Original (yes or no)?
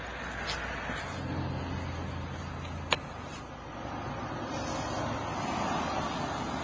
yes